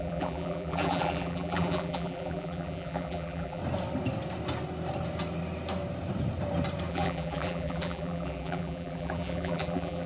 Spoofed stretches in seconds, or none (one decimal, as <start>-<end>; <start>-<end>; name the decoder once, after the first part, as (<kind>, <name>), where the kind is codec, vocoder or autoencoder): 0.0-3.6 (vocoder, BigVGAN v2); 6.9-10.1